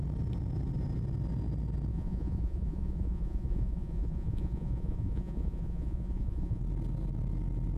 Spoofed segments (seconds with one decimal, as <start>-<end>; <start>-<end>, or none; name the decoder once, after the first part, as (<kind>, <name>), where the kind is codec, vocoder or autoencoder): 1.9-6.6 (vocoder, Vocos)